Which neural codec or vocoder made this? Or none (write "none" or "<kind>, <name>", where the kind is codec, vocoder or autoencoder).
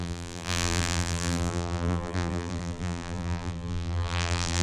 vocoder, BigVGAN v2